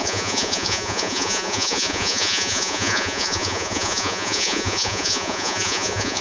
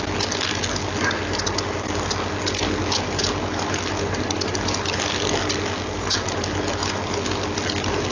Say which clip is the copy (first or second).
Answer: first